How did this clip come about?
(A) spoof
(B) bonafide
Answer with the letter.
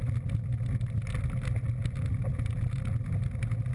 B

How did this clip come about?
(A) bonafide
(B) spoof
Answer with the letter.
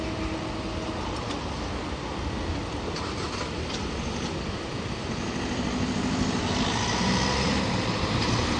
A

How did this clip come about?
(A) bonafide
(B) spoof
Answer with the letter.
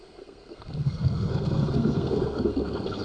B